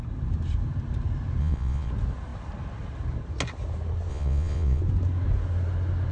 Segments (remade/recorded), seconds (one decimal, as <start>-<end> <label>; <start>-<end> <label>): 0.0-1.4 recorded; 1.4-1.9 remade; 1.9-4.1 recorded; 4.1-4.8 remade; 4.8-6.1 recorded